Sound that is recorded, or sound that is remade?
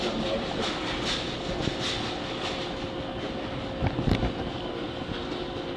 recorded